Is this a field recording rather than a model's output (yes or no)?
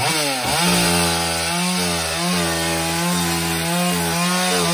yes